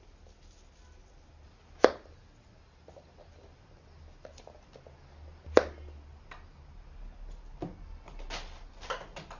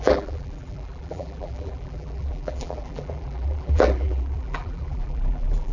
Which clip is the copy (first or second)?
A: second